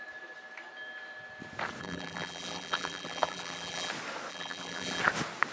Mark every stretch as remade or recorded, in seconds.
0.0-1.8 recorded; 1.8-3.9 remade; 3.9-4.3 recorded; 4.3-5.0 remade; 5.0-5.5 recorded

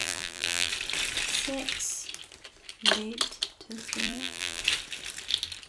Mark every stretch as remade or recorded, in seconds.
0.0-0.7 remade; 0.7-4.0 recorded; 4.0-4.6 remade; 4.6-5.7 recorded